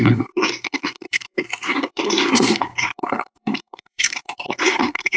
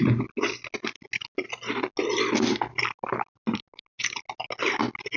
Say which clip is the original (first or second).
second